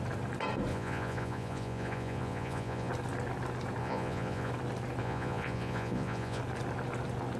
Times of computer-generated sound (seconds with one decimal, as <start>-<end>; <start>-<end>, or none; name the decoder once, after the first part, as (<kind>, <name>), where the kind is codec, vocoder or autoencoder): 0.7-2.9 (vocoder, Vocos); 3.8-4.5; 5.0-6.4